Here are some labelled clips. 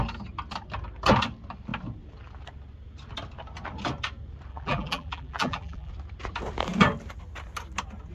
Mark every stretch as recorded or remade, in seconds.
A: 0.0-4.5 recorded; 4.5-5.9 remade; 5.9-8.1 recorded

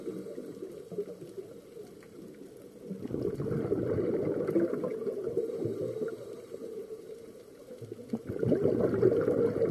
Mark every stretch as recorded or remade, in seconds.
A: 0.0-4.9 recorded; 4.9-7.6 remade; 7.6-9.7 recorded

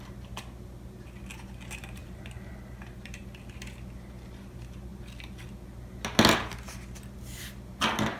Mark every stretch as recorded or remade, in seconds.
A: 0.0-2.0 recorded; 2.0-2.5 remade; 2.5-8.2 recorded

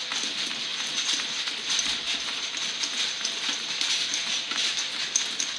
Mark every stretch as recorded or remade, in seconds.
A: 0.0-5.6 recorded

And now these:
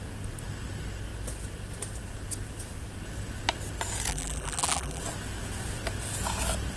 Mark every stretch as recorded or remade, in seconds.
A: 0.0-4.1 recorded; 4.1-5.0 remade; 5.0-6.8 recorded

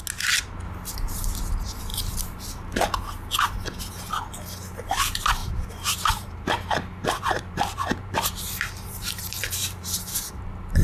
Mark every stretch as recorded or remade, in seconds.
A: 0.0-5.4 recorded; 5.4-10.0 remade; 10.0-10.8 recorded